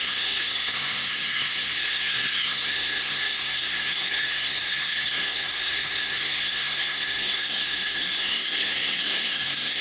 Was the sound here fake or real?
fake